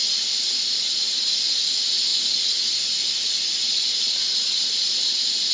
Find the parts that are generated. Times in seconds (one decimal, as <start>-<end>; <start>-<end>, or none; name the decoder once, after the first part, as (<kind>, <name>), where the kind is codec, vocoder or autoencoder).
none